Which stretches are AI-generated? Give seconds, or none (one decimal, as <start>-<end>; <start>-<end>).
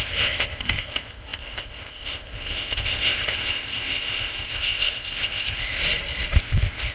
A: 0.0-5.8; 6.4-6.9